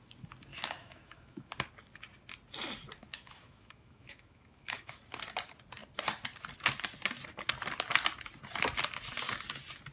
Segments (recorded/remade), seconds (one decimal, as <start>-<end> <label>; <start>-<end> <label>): 0.0-0.5 recorded; 0.5-1.5 remade; 1.5-3.0 recorded; 3.0-5.0 remade; 5.0-9.9 recorded